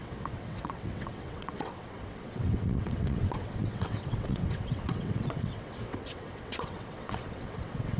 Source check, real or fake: fake